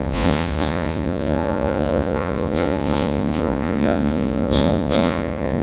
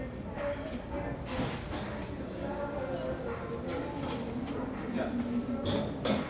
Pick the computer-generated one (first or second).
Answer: first